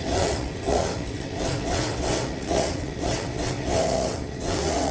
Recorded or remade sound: remade